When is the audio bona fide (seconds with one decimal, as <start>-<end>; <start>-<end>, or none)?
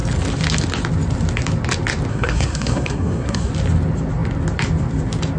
0.0-2.1; 3.5-5.4